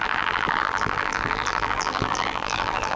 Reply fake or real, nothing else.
fake